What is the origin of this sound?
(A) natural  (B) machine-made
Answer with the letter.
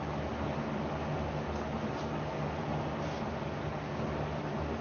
A